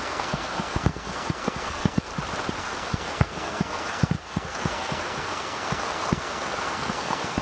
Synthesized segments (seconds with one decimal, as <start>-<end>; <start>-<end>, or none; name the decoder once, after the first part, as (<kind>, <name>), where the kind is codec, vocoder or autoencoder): 0.0-2.1 (codec, SNAC); 2.6-7.4